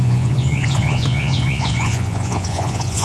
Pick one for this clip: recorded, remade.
remade